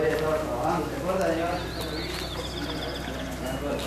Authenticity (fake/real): real